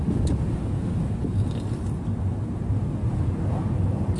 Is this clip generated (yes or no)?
no